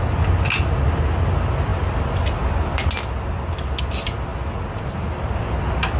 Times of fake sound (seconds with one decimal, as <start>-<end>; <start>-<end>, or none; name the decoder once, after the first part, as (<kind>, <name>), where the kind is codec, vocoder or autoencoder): none